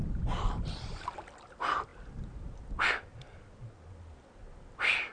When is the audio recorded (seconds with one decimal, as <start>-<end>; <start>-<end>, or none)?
0.0-5.1